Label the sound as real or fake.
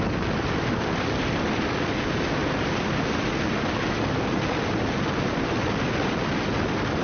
real